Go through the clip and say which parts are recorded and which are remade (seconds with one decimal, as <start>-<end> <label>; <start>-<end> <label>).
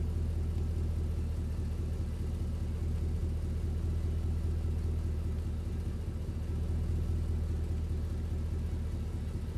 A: 0.0-9.6 recorded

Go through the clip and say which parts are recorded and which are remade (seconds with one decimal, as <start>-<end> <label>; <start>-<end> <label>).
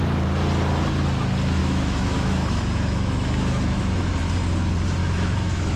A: 0.0-1.6 recorded; 1.6-4.1 remade; 4.1-5.0 recorded; 5.0-5.8 remade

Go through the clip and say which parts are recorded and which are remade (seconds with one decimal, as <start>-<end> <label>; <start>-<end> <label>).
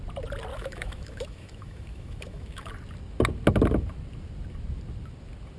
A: 0.0-0.5 recorded; 0.5-2.7 remade; 2.7-5.6 recorded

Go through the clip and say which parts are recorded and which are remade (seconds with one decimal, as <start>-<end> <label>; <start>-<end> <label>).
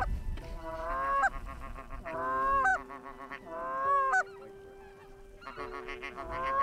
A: 0.0-6.6 recorded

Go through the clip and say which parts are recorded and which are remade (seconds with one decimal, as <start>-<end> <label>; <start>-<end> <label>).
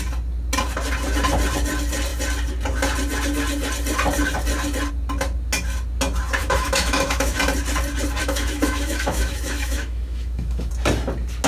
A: 0.0-6.4 recorded; 6.4-7.4 remade; 7.4-8.2 recorded; 8.2-10.7 remade; 10.7-11.5 recorded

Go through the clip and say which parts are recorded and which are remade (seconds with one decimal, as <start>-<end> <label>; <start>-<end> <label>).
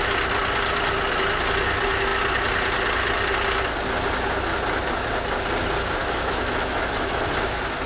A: 0.0-6.0 recorded; 6.0-7.3 remade; 7.3-7.9 recorded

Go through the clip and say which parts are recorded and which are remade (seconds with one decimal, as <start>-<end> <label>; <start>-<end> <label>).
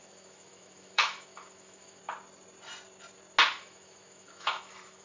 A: 0.0-2.0 remade; 2.0-3.5 recorded; 3.5-5.0 remade